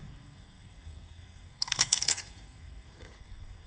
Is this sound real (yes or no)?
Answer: no